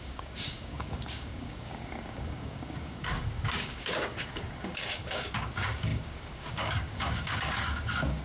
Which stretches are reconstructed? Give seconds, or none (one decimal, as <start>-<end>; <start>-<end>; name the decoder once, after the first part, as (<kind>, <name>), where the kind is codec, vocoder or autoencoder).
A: 0.0-8.2 (codec, DAC)